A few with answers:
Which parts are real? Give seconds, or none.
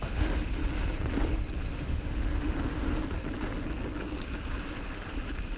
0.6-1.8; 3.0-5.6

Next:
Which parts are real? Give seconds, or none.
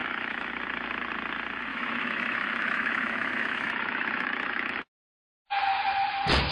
0.5-1.7; 5.6-6.5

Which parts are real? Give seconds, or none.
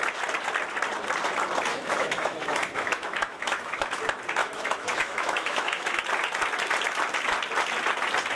0.0-1.7; 3.9-4.4; 6.0-8.3